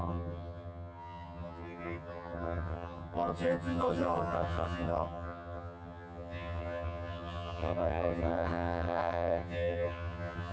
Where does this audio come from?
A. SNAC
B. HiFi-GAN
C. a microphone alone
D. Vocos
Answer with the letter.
B